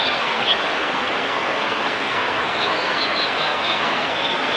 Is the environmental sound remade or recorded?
remade